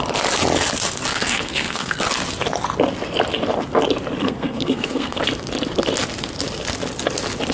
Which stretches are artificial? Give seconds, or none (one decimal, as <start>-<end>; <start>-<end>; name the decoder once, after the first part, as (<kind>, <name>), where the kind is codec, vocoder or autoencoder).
1.1-2.0 (codec, SNAC); 4.2-5.2